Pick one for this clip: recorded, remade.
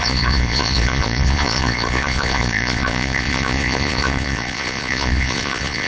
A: remade